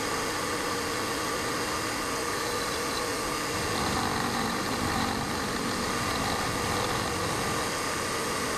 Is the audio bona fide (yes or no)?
yes